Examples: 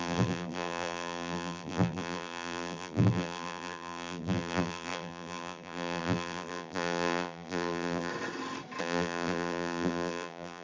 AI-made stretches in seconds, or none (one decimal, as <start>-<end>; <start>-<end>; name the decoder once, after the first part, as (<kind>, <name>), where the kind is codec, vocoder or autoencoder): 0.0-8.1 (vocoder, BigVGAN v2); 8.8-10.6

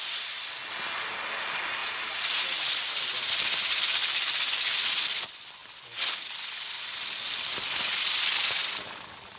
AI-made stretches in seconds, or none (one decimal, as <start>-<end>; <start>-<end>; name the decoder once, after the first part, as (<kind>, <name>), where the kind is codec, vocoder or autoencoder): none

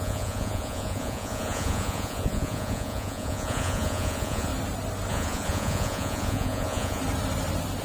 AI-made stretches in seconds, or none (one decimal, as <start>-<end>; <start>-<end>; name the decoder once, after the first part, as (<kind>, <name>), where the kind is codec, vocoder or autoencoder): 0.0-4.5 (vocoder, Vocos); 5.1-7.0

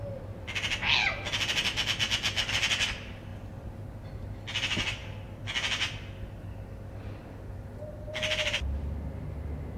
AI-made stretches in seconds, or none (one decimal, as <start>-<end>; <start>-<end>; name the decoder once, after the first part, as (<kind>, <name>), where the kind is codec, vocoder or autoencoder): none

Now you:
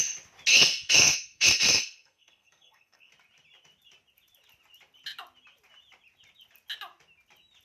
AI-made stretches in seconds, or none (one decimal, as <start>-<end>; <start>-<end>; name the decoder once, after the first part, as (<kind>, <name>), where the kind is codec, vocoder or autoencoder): 0.5-3.1 (codec, SNAC)

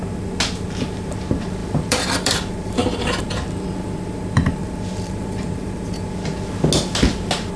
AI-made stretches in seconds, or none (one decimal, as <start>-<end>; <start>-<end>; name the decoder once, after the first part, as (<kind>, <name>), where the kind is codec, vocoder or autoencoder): 1.6-3.2 (vocoder, BigVGAN v2); 4.6-5.7

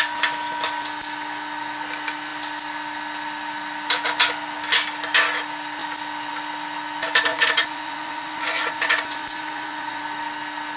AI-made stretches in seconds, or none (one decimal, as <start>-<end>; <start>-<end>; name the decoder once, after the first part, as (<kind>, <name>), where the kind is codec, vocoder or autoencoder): 7.3-10.0 (vocoder, Vocos)

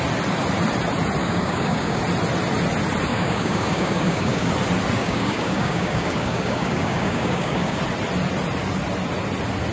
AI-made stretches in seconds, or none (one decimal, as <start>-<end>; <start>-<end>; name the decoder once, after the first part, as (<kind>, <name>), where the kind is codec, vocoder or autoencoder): 1.2-2.0 (codec, DAC); 3.1-4.5; 5.0-7.8